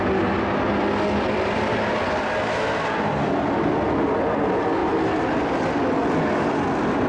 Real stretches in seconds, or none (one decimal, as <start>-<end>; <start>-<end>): 0.0-7.1